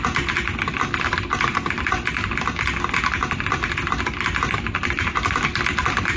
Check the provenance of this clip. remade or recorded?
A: recorded